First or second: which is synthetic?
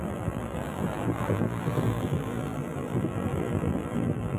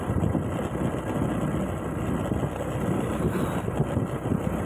first